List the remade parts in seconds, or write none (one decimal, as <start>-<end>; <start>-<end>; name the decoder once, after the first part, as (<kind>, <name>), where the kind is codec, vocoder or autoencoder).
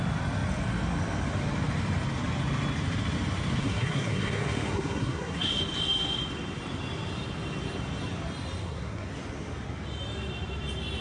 3.6-5.5 (codec, SNAC); 8.6-9.1